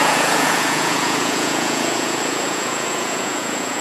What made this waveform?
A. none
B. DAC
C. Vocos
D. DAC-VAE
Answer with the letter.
C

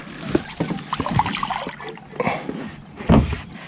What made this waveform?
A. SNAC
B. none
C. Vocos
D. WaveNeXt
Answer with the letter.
B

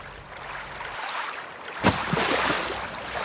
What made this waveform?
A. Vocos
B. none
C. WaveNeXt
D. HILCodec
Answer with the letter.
B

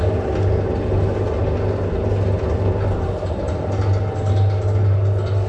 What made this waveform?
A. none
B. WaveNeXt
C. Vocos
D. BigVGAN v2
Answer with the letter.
A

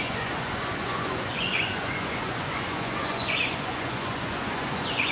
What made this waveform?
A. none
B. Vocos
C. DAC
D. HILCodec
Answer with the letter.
B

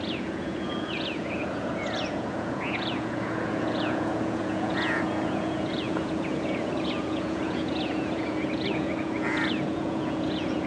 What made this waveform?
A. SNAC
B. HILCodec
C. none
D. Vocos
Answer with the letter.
D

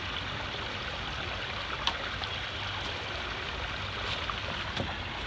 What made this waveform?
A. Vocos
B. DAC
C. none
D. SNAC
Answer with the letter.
C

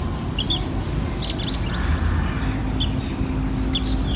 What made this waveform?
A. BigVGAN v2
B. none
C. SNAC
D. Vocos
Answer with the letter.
B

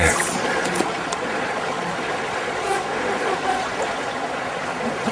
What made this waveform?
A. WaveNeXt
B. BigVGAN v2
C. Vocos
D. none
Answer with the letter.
C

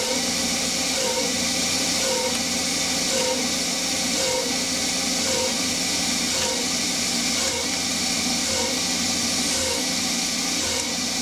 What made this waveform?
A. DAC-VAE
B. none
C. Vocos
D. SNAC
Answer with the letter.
B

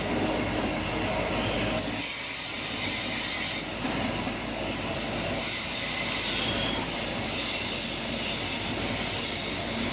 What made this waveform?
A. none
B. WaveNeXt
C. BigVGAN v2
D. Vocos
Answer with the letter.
A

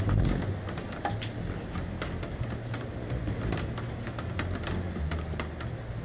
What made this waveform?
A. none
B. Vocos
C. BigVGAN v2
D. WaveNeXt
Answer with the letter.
A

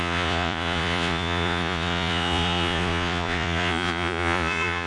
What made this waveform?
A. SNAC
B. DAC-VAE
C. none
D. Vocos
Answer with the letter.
D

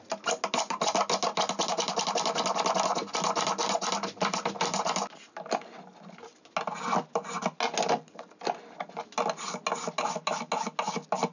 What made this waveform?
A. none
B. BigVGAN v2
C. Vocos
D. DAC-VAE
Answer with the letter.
A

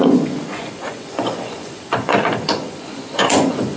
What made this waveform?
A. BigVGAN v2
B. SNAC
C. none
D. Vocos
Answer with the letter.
D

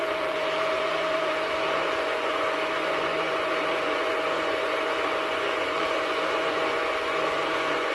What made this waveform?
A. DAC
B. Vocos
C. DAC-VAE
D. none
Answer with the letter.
B